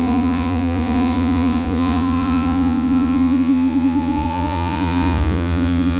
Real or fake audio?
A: fake